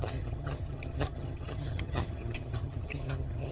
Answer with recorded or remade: remade